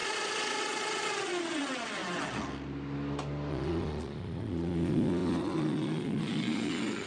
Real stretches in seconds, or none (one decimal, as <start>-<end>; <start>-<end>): 2.0-3.5